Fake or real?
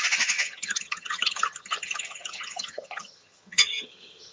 fake